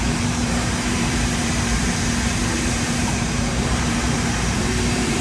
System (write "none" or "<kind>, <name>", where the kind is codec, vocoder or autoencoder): vocoder, BigVGAN v2